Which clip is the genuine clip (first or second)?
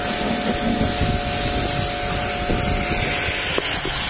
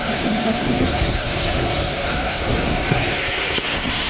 first